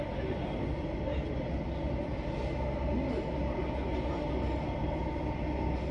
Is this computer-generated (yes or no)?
no